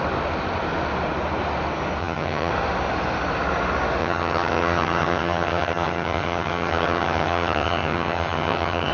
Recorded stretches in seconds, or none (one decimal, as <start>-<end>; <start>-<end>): 0.0-2.0; 2.5-4.0